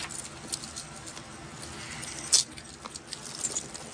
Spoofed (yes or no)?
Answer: no